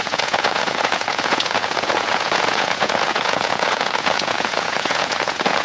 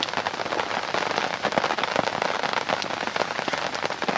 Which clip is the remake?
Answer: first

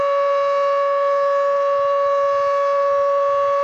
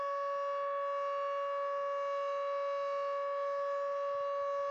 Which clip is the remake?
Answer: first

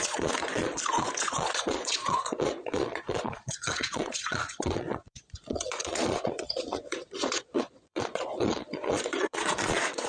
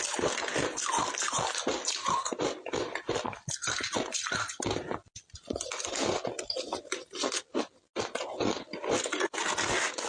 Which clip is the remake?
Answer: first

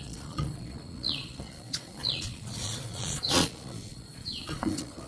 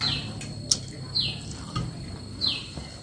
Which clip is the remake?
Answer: first